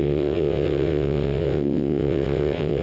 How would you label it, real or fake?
fake